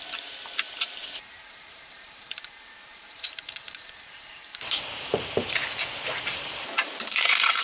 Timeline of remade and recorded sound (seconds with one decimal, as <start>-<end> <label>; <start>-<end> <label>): 0.0-1.5 recorded; 1.5-5.6 remade; 5.6-6.2 recorded; 6.2-7.6 remade